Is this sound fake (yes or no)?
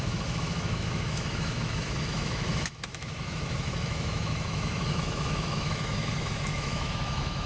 yes